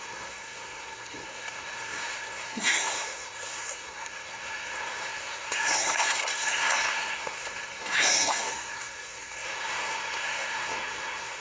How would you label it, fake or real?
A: fake